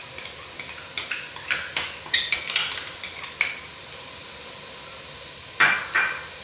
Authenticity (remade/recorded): recorded